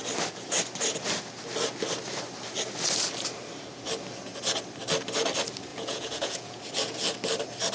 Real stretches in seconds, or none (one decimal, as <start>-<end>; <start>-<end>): 0.0-5.7; 6.6-7.7